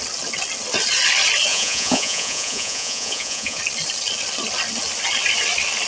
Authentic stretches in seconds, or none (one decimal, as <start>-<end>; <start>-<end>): 0.0-1.5; 3.6-5.9